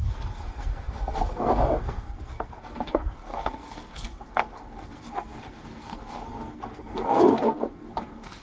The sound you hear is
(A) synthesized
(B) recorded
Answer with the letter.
A